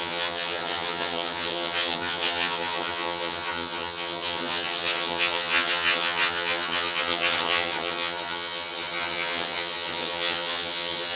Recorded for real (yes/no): no